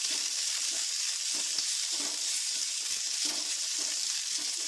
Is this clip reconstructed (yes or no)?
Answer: yes